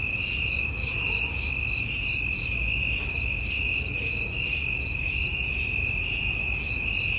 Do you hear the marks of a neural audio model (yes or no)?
no